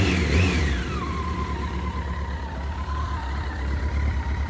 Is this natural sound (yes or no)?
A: yes